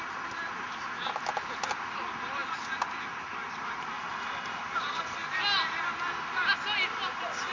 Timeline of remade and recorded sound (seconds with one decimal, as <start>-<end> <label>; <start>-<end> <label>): 0.0-7.5 recorded